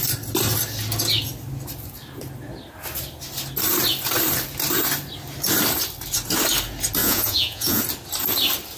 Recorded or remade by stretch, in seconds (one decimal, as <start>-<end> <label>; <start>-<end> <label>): 0.0-7.0 recorded; 7.0-7.8 remade; 7.8-8.8 recorded